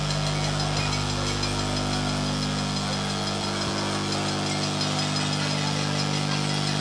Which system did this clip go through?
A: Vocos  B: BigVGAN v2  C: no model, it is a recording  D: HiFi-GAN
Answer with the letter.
C